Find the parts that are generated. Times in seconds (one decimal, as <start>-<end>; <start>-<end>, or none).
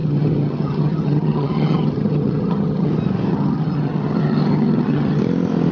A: 0.0-2.9; 3.3-5.2